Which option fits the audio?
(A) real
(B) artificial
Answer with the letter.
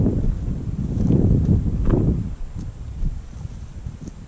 A